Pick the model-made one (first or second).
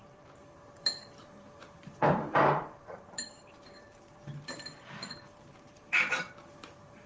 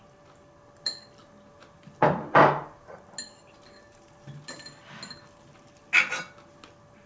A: first